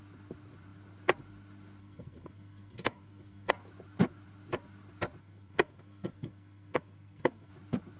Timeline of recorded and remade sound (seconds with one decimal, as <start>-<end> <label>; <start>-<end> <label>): 0.0-1.8 recorded; 1.8-3.5 remade; 3.5-5.2 recorded; 5.2-7.5 remade; 7.5-8.0 recorded